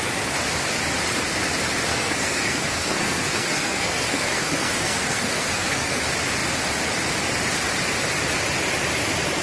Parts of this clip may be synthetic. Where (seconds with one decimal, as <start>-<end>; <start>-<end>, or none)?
1.9-6.0